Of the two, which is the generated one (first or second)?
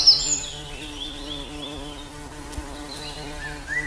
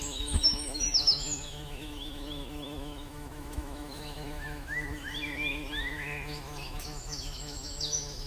second